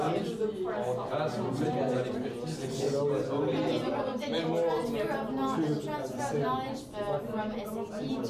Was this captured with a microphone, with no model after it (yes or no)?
yes